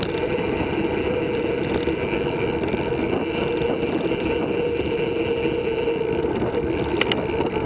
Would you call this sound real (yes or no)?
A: yes